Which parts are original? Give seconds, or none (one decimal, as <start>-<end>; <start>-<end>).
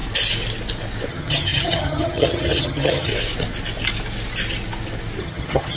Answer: 0.0-1.1; 3.1-5.2